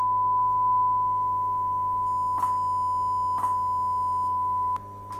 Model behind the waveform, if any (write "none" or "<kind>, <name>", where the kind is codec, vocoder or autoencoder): none